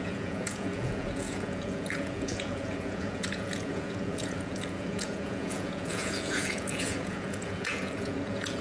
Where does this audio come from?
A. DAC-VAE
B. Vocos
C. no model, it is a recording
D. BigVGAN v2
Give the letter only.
B